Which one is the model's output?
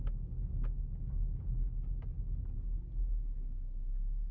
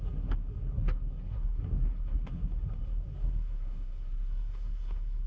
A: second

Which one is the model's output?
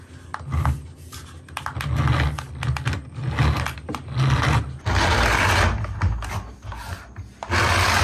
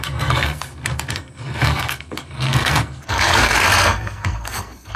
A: second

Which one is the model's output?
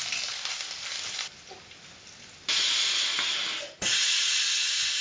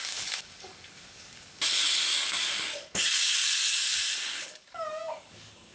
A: second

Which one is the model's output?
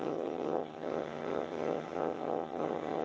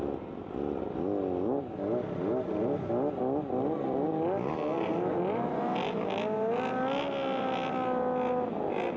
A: first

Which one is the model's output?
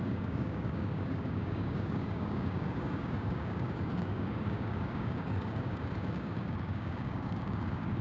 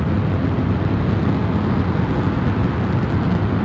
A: first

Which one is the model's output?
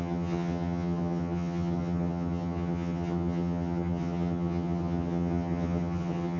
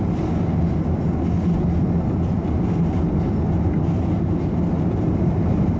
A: first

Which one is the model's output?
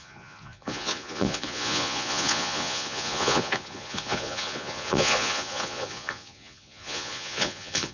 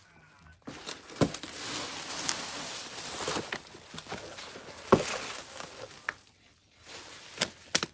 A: first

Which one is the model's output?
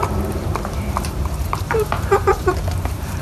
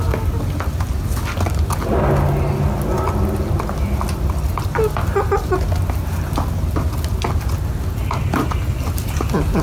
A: first